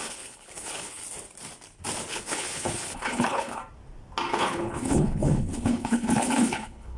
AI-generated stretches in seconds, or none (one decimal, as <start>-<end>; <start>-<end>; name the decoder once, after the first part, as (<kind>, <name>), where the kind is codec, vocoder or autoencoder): 0.0-1.0 (codec, HILCodec); 2.1-3.6; 4.3-7.0

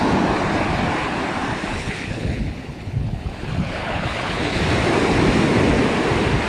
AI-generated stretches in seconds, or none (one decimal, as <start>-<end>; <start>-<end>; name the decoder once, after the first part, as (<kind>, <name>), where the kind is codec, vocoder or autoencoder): 1.7-4.6 (codec, HILCodec)

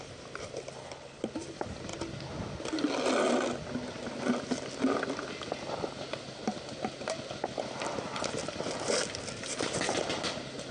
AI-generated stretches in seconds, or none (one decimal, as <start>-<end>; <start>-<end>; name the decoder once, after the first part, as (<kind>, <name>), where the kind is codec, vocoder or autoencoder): 0.8-1.3 (codec, HILCodec)

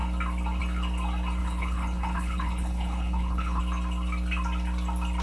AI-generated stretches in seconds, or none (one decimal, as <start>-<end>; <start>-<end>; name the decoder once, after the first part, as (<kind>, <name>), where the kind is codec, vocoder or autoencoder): 1.4-3.6 (codec, HILCodec)

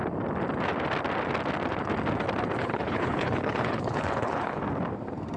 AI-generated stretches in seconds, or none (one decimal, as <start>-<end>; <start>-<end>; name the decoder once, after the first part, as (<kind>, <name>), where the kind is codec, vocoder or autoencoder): 2.6-4.6 (codec, HILCodec)

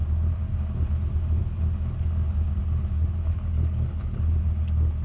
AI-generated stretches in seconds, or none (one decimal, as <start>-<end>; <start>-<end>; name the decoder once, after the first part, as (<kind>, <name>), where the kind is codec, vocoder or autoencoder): 3.2-4.2 (codec, HILCodec)